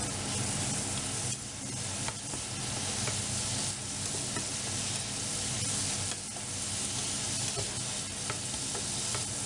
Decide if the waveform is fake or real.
real